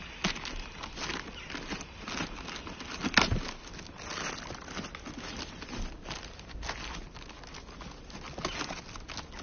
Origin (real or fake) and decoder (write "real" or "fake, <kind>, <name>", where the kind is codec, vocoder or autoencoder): real